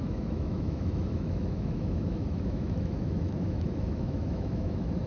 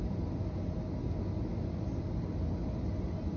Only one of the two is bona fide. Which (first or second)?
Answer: second